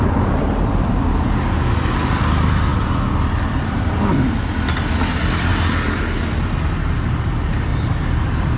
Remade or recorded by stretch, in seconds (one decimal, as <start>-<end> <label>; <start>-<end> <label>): 0.0-5.5 recorded; 5.5-6.2 remade; 6.2-7.7 recorded; 7.7-8.6 remade